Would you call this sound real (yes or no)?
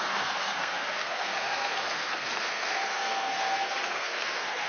no